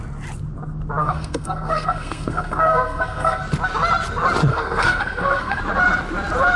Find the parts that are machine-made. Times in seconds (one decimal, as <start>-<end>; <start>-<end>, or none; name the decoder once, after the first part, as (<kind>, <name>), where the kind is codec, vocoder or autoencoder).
1.0-3.4 (codec, SNAC); 4.5-5.6